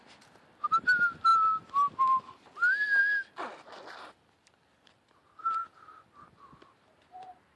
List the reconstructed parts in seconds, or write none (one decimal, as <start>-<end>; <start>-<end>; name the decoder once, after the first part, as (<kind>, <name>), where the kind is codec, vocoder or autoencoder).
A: none